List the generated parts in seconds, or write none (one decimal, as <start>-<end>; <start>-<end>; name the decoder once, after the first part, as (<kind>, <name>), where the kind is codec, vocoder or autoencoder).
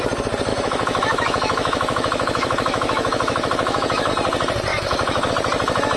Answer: 0.5-4.1 (autoencoder, DAC-VAE); 4.7-5.3